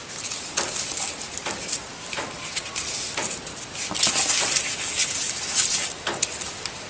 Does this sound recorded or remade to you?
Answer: recorded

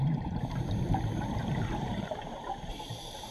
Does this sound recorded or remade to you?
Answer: remade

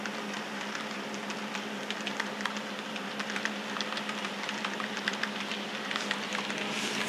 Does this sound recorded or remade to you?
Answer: recorded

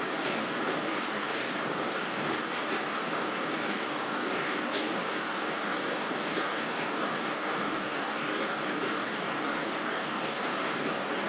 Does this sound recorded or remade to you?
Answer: remade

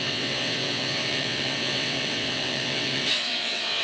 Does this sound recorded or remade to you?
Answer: remade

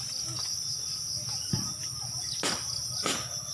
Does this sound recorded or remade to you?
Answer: recorded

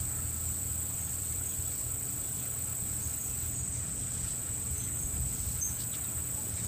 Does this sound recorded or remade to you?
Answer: remade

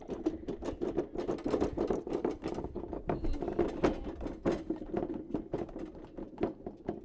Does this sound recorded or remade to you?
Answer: recorded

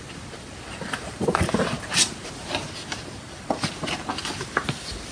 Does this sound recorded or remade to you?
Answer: recorded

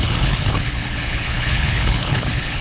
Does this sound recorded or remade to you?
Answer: remade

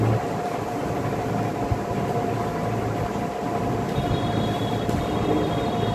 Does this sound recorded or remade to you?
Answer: recorded